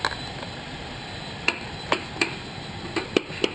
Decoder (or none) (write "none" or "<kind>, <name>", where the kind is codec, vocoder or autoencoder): vocoder, BigVGAN v2